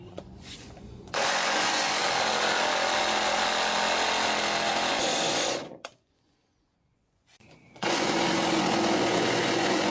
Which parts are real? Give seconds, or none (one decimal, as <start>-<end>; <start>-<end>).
2.0-4.9